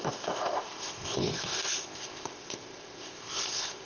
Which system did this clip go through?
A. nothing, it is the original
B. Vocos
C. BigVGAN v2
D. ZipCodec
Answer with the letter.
D